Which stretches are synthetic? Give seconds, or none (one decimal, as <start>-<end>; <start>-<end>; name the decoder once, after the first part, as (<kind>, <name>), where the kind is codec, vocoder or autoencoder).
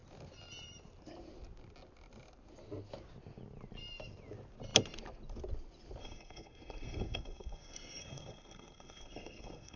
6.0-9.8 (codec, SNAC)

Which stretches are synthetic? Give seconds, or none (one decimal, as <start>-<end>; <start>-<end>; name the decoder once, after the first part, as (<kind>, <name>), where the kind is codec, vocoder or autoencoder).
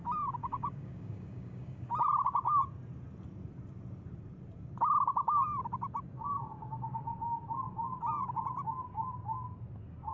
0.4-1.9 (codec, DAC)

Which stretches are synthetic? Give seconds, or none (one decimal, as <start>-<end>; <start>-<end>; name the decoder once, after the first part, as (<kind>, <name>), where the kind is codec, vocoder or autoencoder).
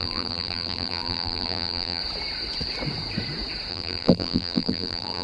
0.0-2.0 (vocoder, BigVGAN v2); 3.7-5.2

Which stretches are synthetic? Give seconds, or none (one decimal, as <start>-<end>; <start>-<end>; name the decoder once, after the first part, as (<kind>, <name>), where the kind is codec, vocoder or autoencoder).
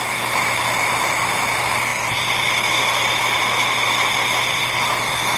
none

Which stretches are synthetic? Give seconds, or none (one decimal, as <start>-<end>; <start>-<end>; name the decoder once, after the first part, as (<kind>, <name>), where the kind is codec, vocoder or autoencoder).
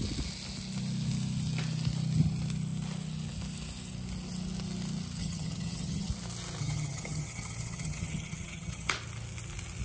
5.2-6.1 (vocoder, HiFi-GAN); 6.6-8.9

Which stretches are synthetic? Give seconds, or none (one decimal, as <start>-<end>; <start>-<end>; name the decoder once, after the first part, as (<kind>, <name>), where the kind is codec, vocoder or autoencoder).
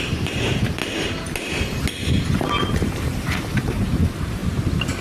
0.0-0.8 (vocoder, BigVGAN v2); 2.3-4.4